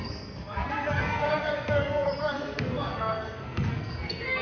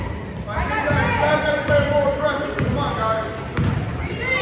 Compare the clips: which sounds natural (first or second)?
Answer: second